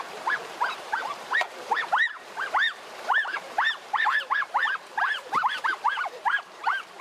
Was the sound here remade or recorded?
remade